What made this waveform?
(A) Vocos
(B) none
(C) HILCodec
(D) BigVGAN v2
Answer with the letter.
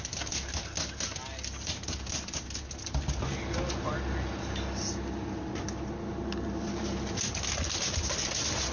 B